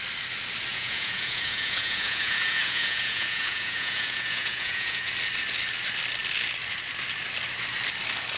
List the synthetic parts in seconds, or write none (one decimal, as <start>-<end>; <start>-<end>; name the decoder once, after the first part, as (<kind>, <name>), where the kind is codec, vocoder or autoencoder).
0.7-5.1 (vocoder, Vocos)